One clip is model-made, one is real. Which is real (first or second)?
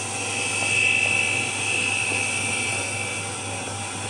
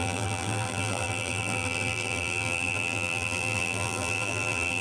first